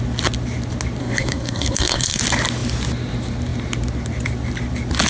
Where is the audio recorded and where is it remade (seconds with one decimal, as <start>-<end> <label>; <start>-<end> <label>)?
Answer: 0.0-1.0 recorded; 1.0-2.2 remade; 2.2-5.1 recorded

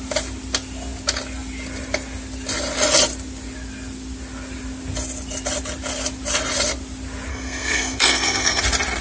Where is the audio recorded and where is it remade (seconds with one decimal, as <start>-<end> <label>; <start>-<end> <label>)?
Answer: 0.0-7.3 recorded; 7.3-8.6 remade; 8.6-9.0 recorded

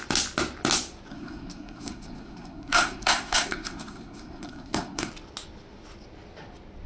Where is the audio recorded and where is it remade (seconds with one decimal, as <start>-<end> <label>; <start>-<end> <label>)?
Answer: 0.0-1.1 recorded; 1.1-5.1 remade; 5.1-6.9 recorded

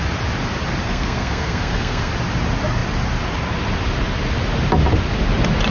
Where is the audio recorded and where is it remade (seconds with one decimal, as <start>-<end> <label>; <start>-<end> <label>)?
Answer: 0.0-0.8 recorded; 0.8-2.1 remade; 2.1-5.7 recorded